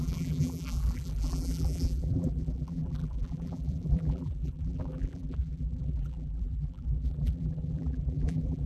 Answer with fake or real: fake